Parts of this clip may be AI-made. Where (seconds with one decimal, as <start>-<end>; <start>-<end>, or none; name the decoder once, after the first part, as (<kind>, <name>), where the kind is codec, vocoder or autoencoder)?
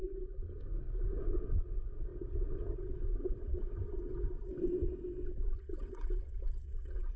1.2-7.2 (vocoder, WaveNeXt)